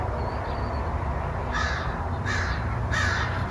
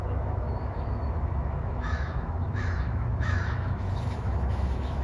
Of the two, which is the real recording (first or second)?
first